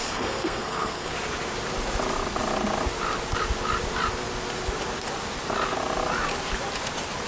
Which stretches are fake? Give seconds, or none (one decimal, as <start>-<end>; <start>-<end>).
0.0-1.1

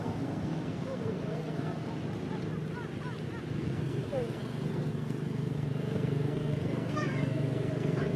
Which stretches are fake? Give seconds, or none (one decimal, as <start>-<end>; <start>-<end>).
0.0-1.9; 3.5-8.2

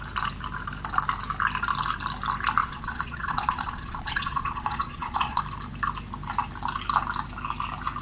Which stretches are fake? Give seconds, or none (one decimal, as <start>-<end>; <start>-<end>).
2.6-5.4

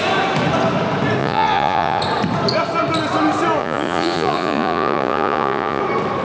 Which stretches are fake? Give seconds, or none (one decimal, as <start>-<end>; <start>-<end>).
1.2-2.0; 3.6-5.8

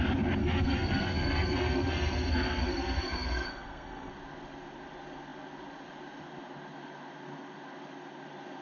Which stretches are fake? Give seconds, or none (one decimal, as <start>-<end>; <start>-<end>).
0.4-4.1